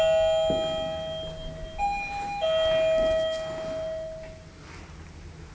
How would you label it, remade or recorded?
recorded